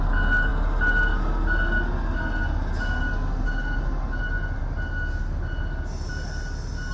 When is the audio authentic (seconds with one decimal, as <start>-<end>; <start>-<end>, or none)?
0.0-6.9